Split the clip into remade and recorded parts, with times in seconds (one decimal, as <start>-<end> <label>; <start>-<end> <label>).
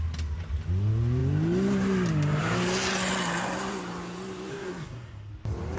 0.0-4.5 recorded; 4.5-5.3 remade; 5.3-5.8 recorded